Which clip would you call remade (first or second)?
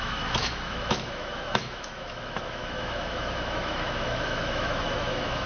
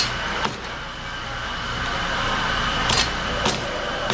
first